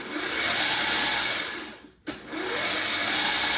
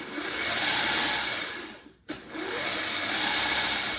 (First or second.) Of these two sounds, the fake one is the second